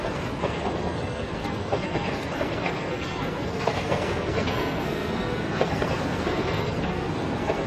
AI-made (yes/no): yes